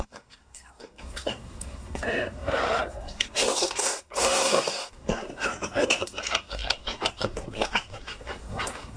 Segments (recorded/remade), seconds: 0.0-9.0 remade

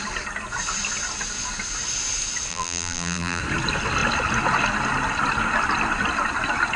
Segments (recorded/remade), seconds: 0.0-2.5 recorded; 2.5-3.4 remade; 3.4-6.8 recorded

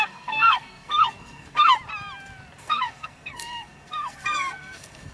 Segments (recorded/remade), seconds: 0.0-1.7 remade; 1.7-2.6 recorded; 2.6-5.1 remade

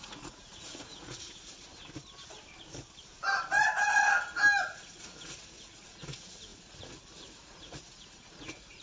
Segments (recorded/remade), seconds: 0.0-1.7 remade; 1.7-4.6 recorded; 4.6-8.8 remade